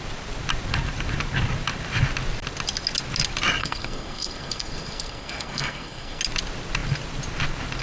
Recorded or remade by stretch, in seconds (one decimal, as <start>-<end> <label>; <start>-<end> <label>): 0.0-3.6 recorded; 3.6-6.2 remade; 6.2-7.8 recorded